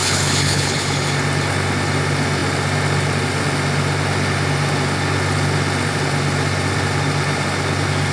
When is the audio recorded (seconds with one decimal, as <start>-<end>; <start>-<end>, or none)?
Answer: 1.0-8.1